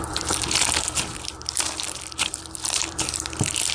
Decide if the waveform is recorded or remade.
remade